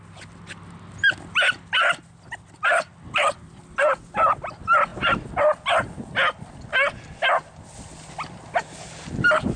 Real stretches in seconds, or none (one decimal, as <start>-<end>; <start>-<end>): 0.0-9.6